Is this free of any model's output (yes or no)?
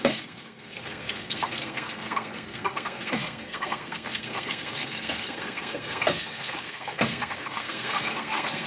no